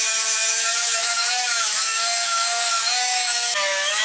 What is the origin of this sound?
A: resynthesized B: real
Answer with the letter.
A